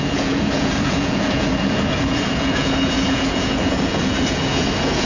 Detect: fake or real fake